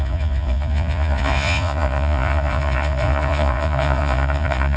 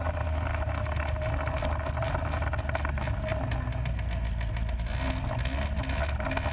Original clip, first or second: second